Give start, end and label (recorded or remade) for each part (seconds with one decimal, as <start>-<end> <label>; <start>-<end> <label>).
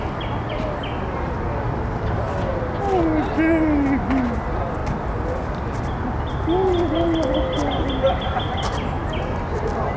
0.0-10.0 recorded